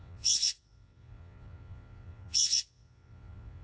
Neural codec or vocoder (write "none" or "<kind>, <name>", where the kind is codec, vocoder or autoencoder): vocoder, Vocos